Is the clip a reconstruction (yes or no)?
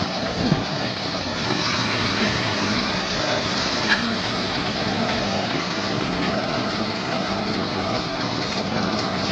yes